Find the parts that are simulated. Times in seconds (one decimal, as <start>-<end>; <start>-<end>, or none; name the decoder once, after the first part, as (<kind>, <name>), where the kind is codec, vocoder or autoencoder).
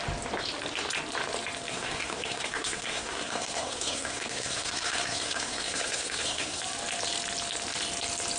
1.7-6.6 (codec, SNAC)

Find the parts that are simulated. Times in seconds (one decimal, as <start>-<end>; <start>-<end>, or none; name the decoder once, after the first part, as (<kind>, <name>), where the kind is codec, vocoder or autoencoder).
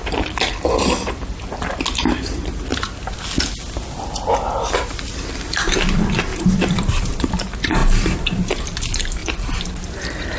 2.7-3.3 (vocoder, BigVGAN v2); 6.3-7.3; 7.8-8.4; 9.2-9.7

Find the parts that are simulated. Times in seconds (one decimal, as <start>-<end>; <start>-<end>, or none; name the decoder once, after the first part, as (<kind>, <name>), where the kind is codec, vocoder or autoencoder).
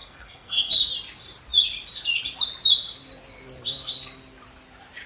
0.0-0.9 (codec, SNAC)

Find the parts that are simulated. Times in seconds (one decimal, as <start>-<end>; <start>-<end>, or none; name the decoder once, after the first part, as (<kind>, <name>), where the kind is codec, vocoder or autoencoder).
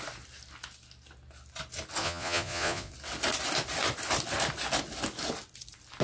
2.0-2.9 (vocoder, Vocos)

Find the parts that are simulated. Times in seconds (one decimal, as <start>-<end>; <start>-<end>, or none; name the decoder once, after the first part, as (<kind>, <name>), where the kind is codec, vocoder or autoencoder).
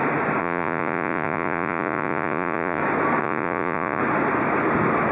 0.4-2.8 (vocoder, Vocos); 3.2-4.0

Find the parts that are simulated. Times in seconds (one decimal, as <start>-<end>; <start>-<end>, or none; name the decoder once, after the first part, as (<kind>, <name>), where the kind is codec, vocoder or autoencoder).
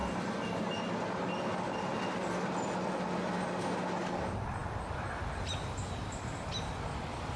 none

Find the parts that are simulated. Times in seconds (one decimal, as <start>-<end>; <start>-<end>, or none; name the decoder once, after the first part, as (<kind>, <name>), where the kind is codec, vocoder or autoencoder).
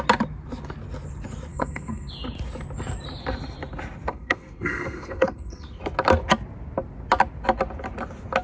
1.5-2.1 (codec, SNAC); 4.1-5.8